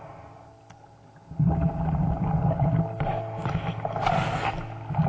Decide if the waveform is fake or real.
real